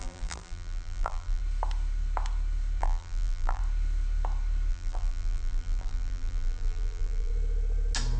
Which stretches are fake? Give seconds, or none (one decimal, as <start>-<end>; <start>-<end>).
0.0-1.4; 2.8-3.6; 4.7-7.3